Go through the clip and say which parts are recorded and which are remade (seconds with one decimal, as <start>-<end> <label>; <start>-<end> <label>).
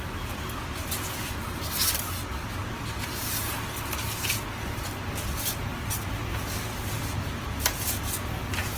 0.0-8.8 recorded